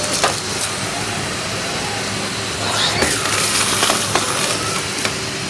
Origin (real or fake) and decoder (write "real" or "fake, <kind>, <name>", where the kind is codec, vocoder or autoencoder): real